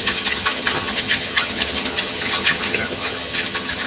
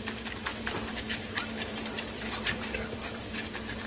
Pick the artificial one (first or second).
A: first